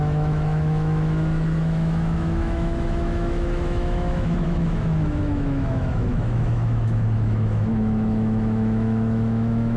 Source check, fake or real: fake